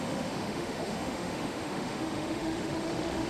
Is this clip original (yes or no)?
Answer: no